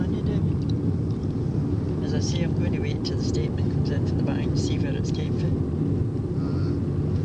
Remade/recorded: recorded